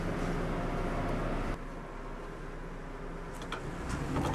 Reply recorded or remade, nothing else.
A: recorded